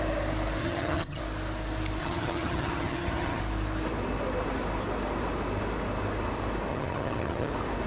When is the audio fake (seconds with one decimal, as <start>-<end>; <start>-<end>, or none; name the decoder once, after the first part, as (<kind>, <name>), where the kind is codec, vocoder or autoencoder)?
0.6-1.2 (vocoder, HiFi-GAN); 2.0-3.4; 6.7-7.5